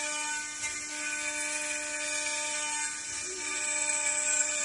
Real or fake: real